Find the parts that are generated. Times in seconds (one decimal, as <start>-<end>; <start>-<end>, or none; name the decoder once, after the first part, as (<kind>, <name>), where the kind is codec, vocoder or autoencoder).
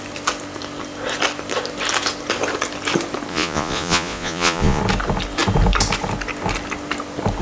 3.3-4.8 (vocoder, Vocos)